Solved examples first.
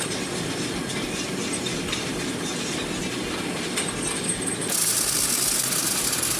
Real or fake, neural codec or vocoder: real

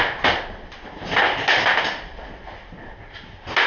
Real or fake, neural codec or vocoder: real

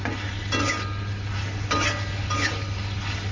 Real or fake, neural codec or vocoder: real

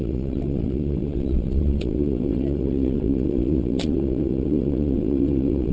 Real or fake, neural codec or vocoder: fake, vocoder, WaveNeXt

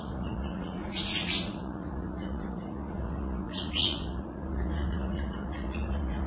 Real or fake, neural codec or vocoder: fake, vocoder, Vocos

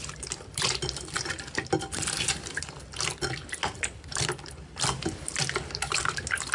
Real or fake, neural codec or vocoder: real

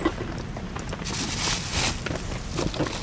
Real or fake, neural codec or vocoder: real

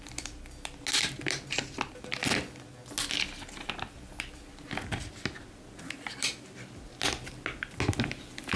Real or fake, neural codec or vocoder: real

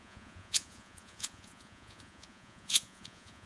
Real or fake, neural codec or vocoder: fake, vocoder, Vocos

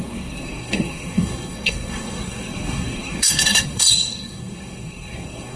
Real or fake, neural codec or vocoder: fake, codec, SNAC